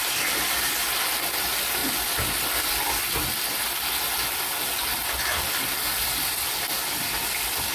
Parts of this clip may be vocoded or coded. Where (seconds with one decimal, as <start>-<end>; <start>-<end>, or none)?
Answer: none